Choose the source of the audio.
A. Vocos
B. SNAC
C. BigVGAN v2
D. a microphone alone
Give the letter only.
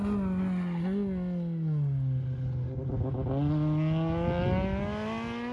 D